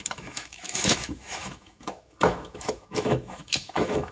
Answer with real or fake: fake